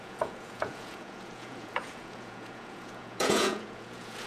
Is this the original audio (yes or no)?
no